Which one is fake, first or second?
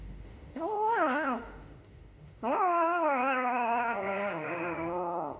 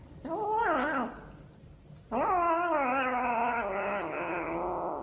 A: first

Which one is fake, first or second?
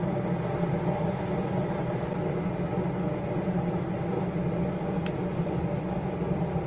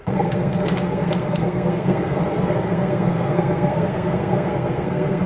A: second